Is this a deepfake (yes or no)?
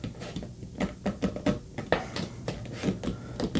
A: no